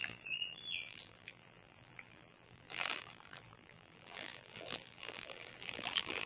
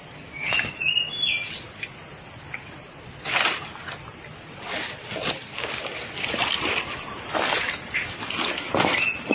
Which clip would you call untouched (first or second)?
second